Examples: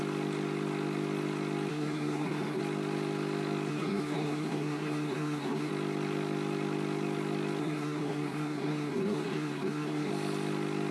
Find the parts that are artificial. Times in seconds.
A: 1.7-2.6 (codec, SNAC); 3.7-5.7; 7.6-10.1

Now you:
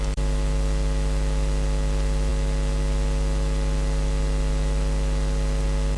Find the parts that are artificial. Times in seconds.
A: none

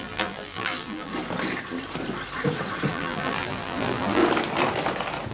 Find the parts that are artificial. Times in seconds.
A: 0.0-1.1 (vocoder, BigVGAN v2); 2.9-4.2

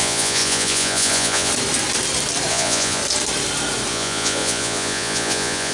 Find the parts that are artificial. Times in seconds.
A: 0.0-1.5 (vocoder, Vocos); 2.5-3.0; 3.9-5.7

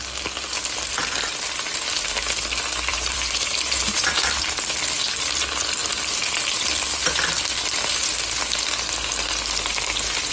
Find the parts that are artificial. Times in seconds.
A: 2.9-4.2 (vocoder, BigVGAN v2)

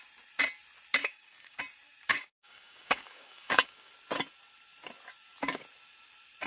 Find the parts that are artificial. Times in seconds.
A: 1.0-1.6 (codec, DAC); 2.1-3.9